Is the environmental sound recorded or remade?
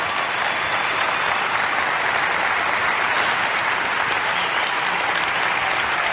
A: recorded